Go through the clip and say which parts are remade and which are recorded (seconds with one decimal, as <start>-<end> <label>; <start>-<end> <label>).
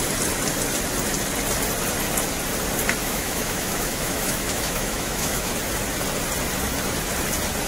0.0-3.0 recorded; 3.0-5.5 remade; 5.5-7.7 recorded